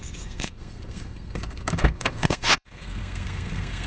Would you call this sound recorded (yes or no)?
no